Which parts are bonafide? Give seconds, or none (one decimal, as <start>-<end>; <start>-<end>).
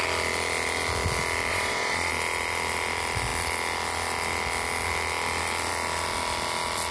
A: 0.0-1.5; 2.1-6.9